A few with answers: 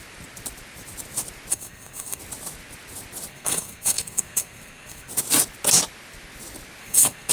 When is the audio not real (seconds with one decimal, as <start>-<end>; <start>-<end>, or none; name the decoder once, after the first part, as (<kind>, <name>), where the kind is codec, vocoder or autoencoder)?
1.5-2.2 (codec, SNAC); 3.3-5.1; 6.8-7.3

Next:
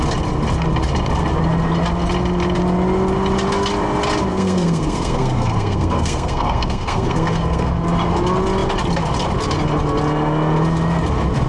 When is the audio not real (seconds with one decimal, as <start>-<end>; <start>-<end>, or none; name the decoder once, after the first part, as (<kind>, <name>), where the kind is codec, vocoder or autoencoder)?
4.3-7.7 (codec, SNAC)

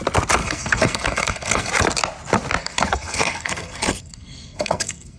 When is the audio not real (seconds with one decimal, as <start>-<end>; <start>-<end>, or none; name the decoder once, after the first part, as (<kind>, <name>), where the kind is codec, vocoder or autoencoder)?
0.4-1.7 (codec, SNAC); 2.6-5.2

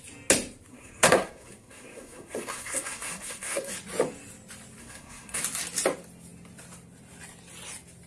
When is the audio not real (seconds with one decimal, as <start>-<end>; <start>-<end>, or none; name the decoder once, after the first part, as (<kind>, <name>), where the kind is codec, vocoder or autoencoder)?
0.7-3.7 (codec, SNAC); 4.8-5.4

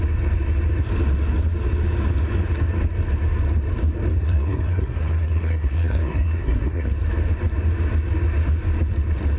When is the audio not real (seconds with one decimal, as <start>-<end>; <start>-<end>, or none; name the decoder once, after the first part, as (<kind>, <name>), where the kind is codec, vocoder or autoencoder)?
4.1-6.9 (codec, SNAC)

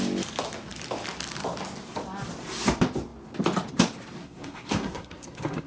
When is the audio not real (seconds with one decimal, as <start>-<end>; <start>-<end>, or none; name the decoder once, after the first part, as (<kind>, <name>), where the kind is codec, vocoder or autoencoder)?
4.2-5.7 (codec, SNAC)